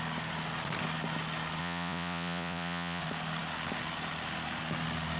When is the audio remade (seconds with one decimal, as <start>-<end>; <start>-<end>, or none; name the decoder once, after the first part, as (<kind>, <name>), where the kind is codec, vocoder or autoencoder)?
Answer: 1.6-3.0 (vocoder, Vocos)